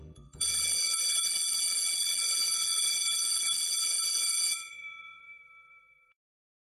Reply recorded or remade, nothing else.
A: remade